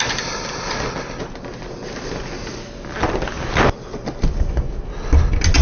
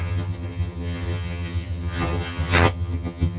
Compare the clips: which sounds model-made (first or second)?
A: second